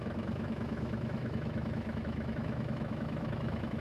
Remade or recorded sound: remade